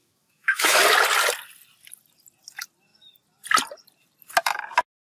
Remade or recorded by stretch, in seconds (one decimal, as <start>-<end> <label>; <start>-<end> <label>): 0.0-0.8 remade; 0.8-5.1 recorded